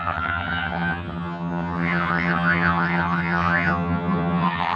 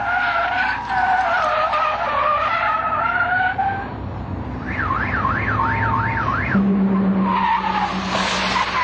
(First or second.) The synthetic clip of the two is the first